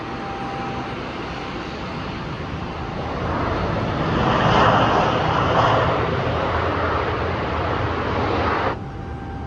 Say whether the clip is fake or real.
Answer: real